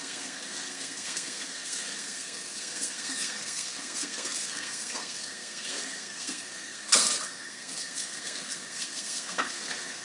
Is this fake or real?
fake